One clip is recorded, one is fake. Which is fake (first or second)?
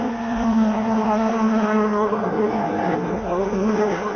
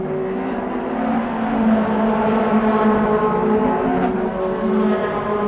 first